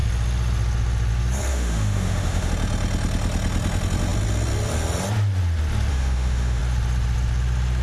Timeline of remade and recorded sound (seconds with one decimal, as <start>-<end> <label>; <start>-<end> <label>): 0.0-1.5 recorded; 1.5-2.5 remade; 2.5-5.9 recorded; 5.9-6.6 remade; 6.6-7.8 recorded